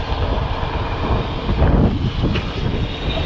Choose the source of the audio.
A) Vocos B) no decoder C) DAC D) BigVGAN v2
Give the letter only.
B